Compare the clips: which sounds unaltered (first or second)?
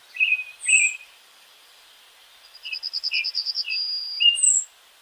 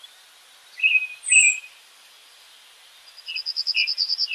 second